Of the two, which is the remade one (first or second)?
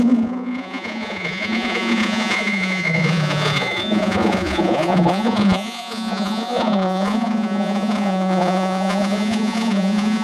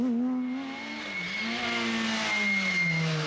first